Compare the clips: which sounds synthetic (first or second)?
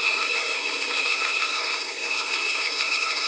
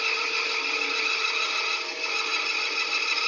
first